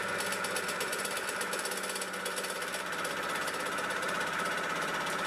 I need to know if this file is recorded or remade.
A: recorded